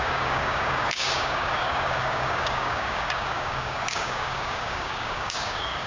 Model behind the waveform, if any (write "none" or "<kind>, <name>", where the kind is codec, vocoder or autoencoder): codec, DAC